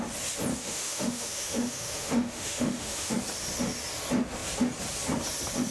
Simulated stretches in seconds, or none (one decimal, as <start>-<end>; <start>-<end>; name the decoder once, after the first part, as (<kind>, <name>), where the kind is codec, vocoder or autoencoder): 0.5-3.1 (autoencoder, DAC-VAE)

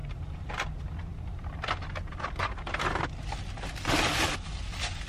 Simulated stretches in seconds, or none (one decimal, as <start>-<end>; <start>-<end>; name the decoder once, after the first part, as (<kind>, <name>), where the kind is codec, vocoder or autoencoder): none

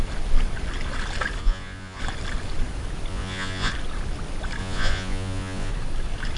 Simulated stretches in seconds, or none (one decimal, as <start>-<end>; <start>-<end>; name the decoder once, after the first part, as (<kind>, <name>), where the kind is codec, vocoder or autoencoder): 1.4-2.0 (vocoder, Vocos); 3.1-3.7; 4.6-5.7

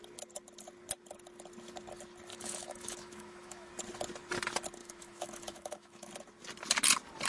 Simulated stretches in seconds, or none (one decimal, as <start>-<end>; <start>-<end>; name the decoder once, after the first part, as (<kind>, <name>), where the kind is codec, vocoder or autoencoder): 2.3-3.7 (autoencoder, DAC-VAE); 4.8-6.1

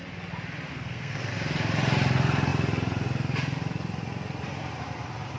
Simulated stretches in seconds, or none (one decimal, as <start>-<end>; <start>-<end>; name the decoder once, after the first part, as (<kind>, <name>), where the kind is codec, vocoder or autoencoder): 0.7-1.3 (codec, SNAC)

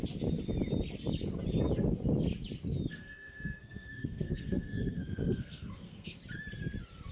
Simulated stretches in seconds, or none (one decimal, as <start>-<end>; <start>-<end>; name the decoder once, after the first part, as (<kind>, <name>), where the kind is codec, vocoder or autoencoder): 2.9-6.2 (codec, SNAC)

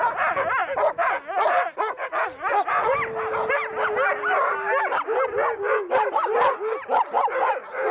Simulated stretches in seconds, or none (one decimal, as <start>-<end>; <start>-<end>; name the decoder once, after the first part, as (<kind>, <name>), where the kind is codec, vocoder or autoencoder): none

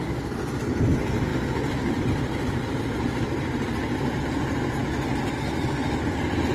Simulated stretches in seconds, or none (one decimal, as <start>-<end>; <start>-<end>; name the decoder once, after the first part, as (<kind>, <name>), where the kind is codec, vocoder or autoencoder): 1.3-4.2 (vocoder, BigVGAN v2)